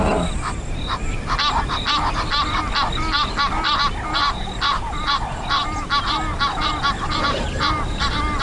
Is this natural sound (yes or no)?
yes